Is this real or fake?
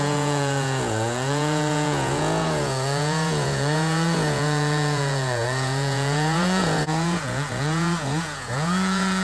fake